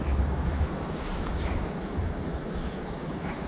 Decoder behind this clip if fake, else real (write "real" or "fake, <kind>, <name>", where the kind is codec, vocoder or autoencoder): fake, autoencoder, DAC-VAE